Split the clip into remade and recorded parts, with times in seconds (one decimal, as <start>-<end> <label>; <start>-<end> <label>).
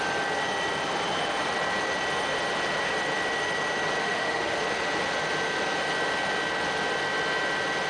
0.0-4.0 recorded; 4.0-4.6 remade; 4.6-7.9 recorded